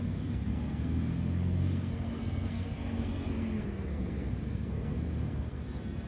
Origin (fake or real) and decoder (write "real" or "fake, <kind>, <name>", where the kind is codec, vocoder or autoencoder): fake, codec, SNAC